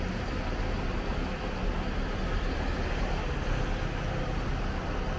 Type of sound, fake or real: real